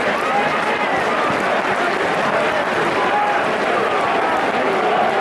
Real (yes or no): yes